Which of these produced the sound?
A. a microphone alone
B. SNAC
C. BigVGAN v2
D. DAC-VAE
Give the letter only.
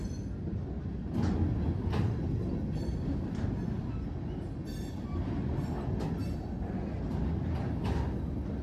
A